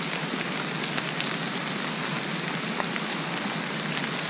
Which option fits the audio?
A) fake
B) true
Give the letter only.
B